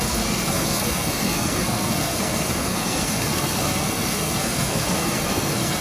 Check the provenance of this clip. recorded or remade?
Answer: remade